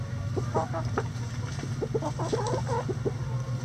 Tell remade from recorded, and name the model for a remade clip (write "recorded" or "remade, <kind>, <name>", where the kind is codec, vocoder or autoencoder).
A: recorded